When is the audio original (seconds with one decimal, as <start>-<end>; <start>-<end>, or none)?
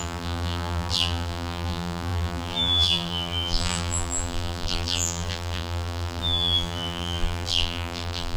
none